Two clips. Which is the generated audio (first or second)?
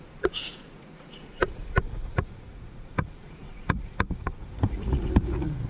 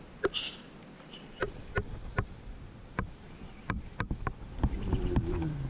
first